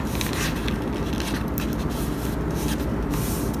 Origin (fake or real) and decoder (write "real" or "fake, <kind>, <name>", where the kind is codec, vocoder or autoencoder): real